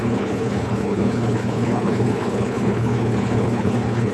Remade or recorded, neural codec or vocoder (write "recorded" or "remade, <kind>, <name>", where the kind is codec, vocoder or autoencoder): remade, codec, HILCodec